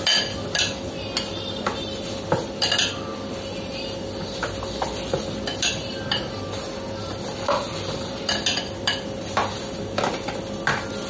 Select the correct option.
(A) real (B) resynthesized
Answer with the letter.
A